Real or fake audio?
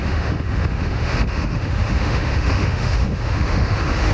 fake